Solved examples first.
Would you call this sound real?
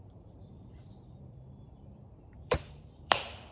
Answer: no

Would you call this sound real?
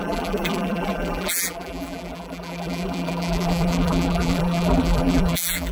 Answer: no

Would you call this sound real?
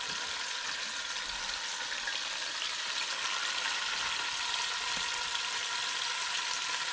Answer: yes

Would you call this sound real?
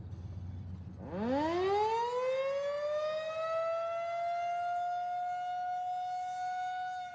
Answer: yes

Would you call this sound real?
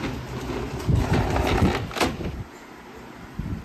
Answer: yes